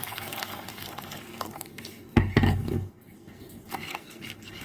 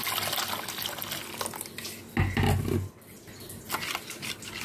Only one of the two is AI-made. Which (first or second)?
first